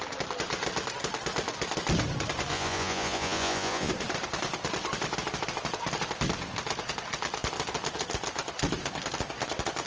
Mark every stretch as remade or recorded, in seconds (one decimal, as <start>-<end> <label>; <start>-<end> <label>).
0.0-2.5 recorded; 2.5-3.9 remade; 3.9-9.9 recorded